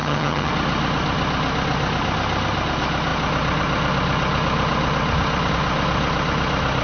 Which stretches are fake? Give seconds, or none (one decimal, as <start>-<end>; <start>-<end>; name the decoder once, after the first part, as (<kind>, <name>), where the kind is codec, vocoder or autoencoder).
0.0-0.5 (vocoder, HiFi-GAN)